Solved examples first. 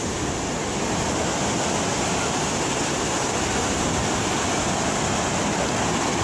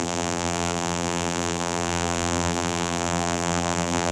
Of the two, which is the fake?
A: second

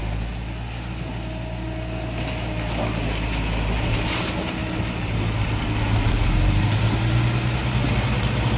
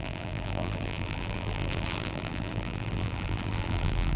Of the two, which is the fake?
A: second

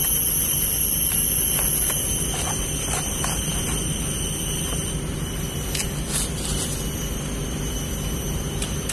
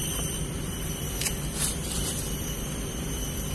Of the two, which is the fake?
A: second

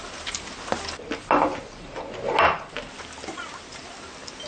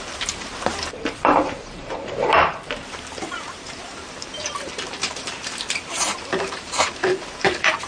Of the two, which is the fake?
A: second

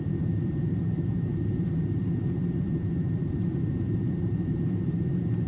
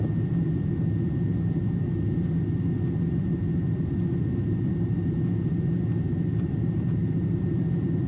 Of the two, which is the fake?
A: first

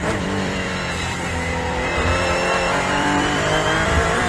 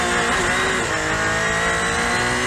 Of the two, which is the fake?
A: first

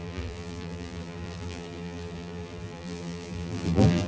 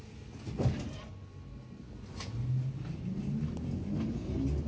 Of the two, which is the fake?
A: first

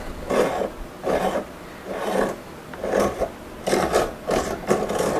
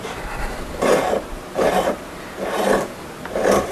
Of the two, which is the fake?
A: second